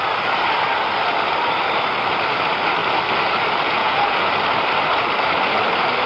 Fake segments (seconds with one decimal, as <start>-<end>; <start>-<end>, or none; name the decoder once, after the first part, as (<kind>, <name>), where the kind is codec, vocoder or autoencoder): 3.8-4.3 (vocoder, Vocos)